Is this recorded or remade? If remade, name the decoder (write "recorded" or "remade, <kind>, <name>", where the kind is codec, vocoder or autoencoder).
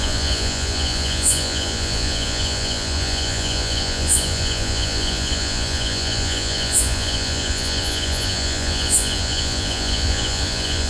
remade, vocoder, Vocos